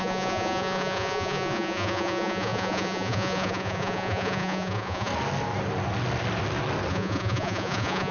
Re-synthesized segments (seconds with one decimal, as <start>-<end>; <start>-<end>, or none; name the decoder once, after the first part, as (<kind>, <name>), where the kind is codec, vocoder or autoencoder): 0.0-5.1 (vocoder, Vocos); 6.9-8.1